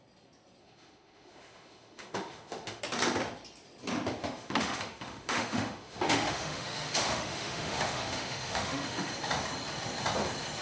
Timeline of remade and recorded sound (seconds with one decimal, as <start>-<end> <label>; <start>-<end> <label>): 0.0-0.6 recorded; 0.6-2.8 remade; 2.8-4.2 recorded; 4.2-9.1 remade; 9.1-10.6 recorded